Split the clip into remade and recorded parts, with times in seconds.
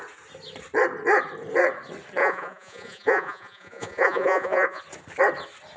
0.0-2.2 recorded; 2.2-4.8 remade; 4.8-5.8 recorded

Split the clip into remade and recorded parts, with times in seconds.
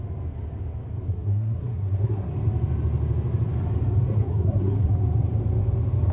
0.0-1.1 recorded; 1.1-2.3 remade; 2.3-4.3 recorded; 4.3-4.9 remade; 4.9-6.1 recorded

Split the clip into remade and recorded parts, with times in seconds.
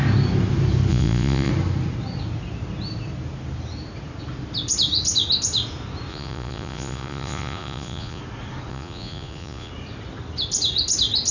0.0-0.9 recorded; 0.9-1.5 remade; 1.5-6.1 recorded; 6.1-8.2 remade; 8.2-8.7 recorded; 8.7-9.7 remade; 9.7-11.3 recorded